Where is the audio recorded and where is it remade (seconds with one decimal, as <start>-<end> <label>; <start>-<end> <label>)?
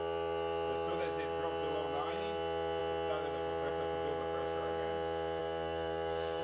0.0-5.4 recorded; 5.4-6.4 remade